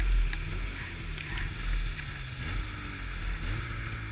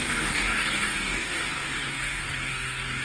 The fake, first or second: second